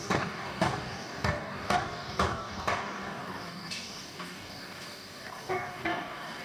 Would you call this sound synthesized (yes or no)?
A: yes